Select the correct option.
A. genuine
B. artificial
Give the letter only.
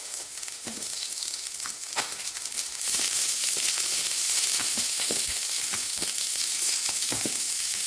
B